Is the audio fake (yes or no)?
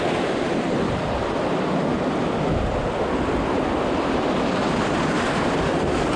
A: no